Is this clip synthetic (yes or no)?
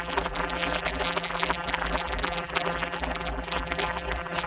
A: yes